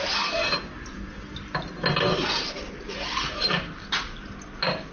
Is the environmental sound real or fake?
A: real